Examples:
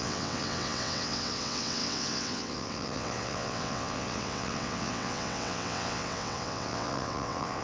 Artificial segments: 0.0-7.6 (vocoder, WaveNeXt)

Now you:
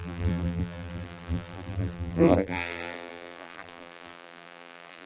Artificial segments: 0.0-5.1 (vocoder, BigVGAN v2)

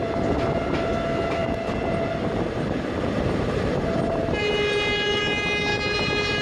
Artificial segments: 1.4-5.2 (vocoder, BigVGAN v2); 5.7-6.4

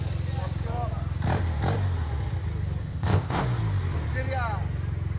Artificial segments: 2.8-3.4 (codec, ZipCodec)